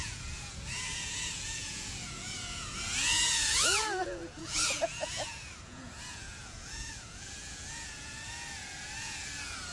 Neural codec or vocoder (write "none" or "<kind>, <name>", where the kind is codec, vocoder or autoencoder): vocoder, Vocos